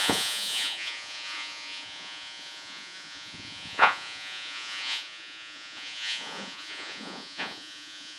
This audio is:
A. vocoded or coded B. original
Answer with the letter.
A